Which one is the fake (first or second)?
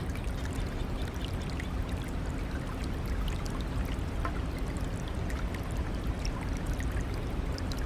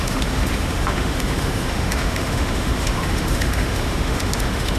second